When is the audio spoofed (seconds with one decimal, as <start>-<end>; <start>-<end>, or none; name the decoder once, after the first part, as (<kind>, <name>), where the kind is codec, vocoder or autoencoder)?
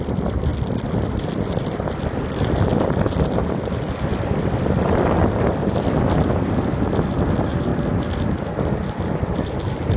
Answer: none